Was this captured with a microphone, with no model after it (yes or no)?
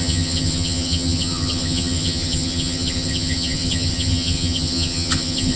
no